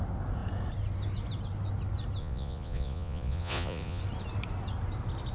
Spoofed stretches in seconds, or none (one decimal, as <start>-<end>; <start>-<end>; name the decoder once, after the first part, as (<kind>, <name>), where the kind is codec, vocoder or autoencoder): 2.2-4.0 (vocoder, Vocos)